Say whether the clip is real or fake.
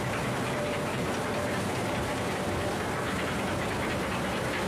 fake